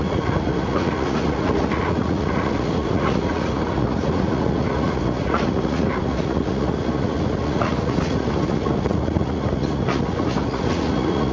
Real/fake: fake